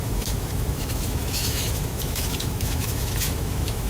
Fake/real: fake